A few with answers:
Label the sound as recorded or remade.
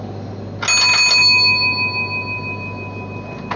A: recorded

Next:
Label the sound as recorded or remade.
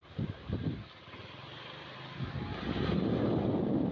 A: recorded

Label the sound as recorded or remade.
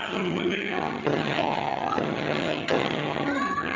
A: remade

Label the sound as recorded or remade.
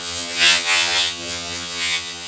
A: remade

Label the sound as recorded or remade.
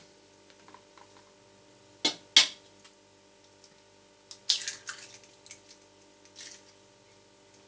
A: recorded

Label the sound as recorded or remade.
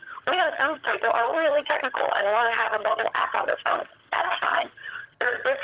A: remade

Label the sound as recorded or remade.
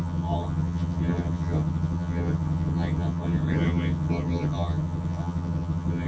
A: remade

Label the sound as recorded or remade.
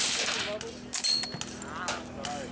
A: recorded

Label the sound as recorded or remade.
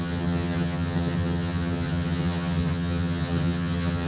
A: remade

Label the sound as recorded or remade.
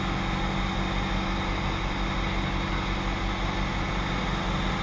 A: recorded